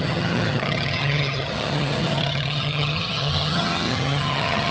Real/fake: fake